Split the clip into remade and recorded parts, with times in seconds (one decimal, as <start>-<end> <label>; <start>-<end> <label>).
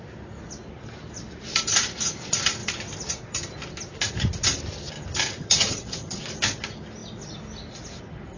0.0-5.4 recorded; 5.4-6.2 remade; 6.2-8.4 recorded